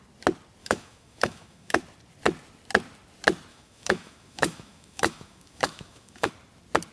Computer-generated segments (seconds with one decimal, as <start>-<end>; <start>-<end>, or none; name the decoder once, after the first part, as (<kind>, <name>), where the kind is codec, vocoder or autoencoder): 0.6-1.8 (autoencoder, DAC-VAE); 3.5-6.3

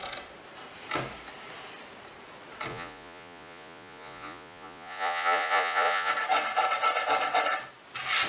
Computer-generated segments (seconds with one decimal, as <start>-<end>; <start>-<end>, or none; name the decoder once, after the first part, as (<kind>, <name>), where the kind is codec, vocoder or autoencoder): 2.7-6.1 (vocoder, Vocos)

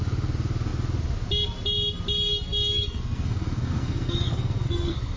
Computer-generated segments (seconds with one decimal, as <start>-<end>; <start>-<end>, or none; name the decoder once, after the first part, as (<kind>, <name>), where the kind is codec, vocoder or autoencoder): 2.3-5.2 (codec, SNAC)

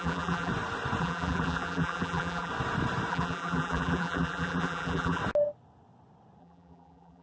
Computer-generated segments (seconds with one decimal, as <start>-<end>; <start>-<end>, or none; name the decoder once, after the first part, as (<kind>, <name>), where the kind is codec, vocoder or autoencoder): 0.0-0.5 (vocoder, BigVGAN v2); 1.0-2.5; 3.1-5.2; 6.4-7.2

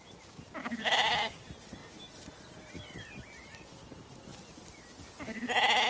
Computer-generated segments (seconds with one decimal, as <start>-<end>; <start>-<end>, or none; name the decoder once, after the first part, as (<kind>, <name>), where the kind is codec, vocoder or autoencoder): 0.6-1.4 (codec, DAC)

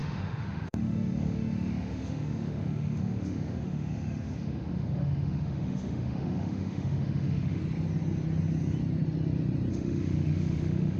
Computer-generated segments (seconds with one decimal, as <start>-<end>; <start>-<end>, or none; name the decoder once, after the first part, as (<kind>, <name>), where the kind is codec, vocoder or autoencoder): 0.0-7.6 (autoencoder, DAC-VAE); 9.7-11.0

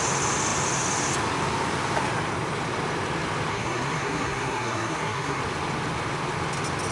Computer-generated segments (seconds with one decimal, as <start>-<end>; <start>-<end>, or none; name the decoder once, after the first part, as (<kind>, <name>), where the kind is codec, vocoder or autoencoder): 3.5-5.4 (codec, SNAC)

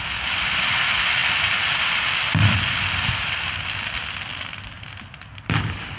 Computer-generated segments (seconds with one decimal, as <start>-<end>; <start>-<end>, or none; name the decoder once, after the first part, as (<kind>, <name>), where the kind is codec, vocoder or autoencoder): none